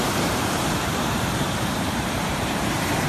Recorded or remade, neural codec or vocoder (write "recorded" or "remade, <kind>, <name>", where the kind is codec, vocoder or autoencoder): remade, vocoder, BigVGAN v2